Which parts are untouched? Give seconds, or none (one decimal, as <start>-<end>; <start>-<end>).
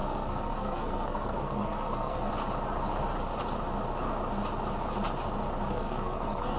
2.3-5.7